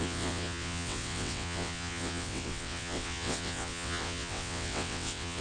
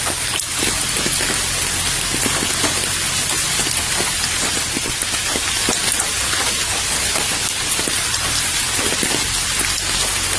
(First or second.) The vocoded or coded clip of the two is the first